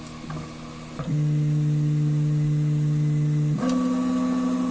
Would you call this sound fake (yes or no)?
no